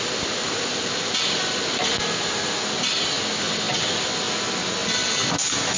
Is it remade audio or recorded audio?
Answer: recorded